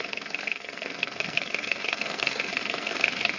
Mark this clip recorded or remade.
remade